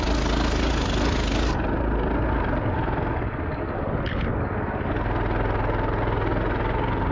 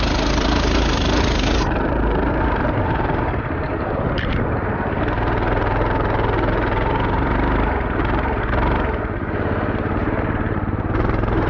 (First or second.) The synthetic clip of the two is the second